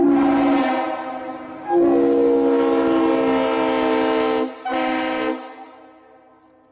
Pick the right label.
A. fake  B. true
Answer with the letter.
B